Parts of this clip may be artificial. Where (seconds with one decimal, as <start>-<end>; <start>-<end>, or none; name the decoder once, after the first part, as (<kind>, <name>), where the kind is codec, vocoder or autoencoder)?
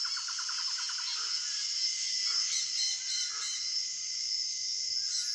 none